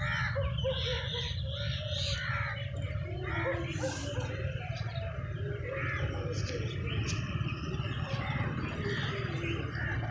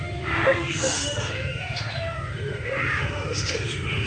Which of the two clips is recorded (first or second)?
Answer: first